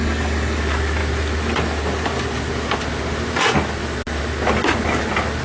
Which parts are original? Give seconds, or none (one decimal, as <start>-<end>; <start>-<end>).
0.6-5.4